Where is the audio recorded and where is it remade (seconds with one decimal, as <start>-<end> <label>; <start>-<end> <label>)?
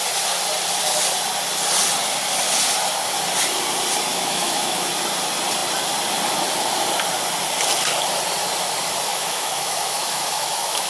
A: 0.0-4.1 recorded; 4.1-4.9 remade; 4.9-9.1 recorded; 9.1-10.9 remade